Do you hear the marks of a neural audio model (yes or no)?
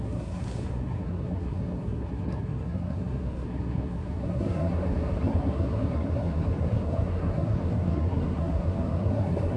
yes